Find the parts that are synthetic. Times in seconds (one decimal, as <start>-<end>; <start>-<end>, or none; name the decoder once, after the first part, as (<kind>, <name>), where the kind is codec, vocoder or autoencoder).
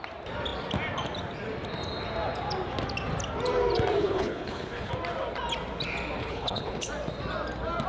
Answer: 4.0-4.9 (codec, HILCodec); 6.2-6.9